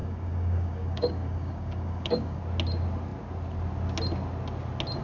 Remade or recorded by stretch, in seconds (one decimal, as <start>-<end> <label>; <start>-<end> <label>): 0.0-2.4 remade; 2.4-5.0 recorded